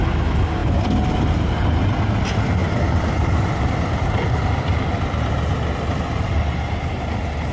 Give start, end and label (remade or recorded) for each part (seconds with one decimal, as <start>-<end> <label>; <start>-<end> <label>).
0.0-2.6 recorded; 2.6-4.9 remade; 4.9-7.5 recorded

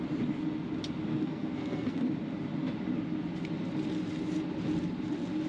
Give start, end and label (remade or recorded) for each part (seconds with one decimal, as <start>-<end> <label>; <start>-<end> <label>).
0.0-1.1 recorded; 1.1-2.1 remade; 2.1-5.5 recorded

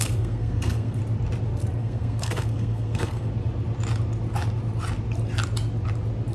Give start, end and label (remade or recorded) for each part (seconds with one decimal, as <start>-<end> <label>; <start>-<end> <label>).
0.0-1.0 remade; 1.0-1.8 recorded; 1.8-3.3 remade; 3.3-6.3 recorded

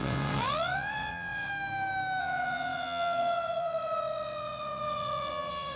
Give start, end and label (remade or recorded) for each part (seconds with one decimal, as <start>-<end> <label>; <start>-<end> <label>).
0.0-1.5 remade; 1.5-2.2 recorded; 2.2-5.8 remade

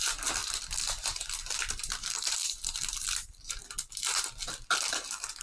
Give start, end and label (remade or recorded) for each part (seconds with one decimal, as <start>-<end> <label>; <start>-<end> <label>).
0.0-0.4 recorded; 0.4-3.5 remade; 3.5-5.4 recorded

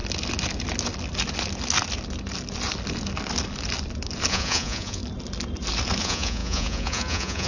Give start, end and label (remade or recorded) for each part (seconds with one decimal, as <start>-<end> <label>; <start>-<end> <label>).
0.0-4.3 recorded; 4.3-5.0 remade; 5.0-6.0 recorded; 6.0-7.5 remade

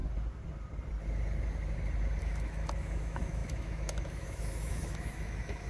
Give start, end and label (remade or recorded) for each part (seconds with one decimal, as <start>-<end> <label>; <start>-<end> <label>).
0.0-2.2 recorded; 2.2-5.7 remade

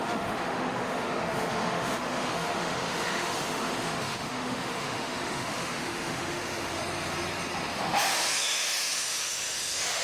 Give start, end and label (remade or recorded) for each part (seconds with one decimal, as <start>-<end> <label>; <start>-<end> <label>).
0.0-6.8 remade; 6.8-7.7 recorded; 7.7-10.0 remade